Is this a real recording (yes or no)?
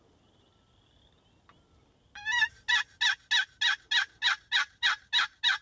yes